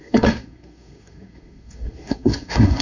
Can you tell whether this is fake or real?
fake